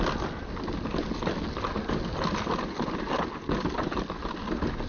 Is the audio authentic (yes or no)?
yes